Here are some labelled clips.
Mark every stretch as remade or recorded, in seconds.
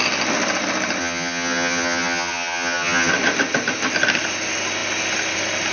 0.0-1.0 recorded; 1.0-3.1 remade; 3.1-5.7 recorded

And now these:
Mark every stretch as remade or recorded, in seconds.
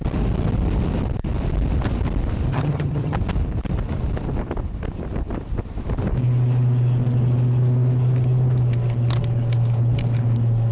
0.0-2.5 recorded; 2.5-3.2 remade; 3.2-10.7 recorded